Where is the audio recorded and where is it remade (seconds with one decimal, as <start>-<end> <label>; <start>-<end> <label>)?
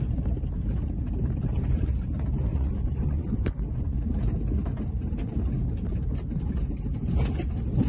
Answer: 0.0-2.5 recorded; 2.5-4.0 remade; 4.0-7.9 recorded